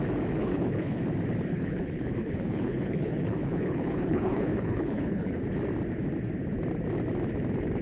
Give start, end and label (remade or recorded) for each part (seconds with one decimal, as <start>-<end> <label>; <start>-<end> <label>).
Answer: 0.0-0.4 recorded; 0.4-1.0 remade; 1.0-1.5 recorded; 1.5-5.4 remade; 5.4-7.8 recorded